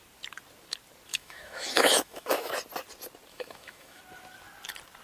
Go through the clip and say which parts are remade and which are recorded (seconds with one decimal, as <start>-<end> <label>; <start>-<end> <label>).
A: 0.0-1.1 recorded; 1.1-2.5 remade; 2.5-3.3 recorded; 3.3-4.0 remade; 4.0-5.0 recorded